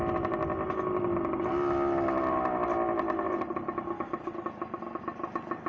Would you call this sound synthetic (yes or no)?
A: no